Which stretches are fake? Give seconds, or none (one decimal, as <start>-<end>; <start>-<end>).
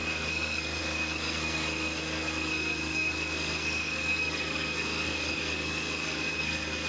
0.0-6.9